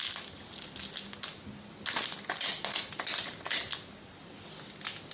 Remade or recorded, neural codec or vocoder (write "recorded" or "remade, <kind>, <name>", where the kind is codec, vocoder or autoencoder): recorded